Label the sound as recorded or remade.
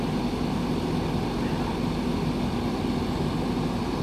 recorded